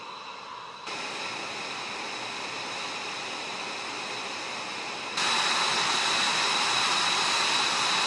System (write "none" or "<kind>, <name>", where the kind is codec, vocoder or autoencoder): none